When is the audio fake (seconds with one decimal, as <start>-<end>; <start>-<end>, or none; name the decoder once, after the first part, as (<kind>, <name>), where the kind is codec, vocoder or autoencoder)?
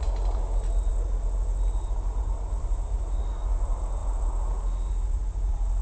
none